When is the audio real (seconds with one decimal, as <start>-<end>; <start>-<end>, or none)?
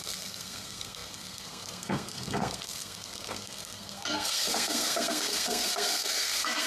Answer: none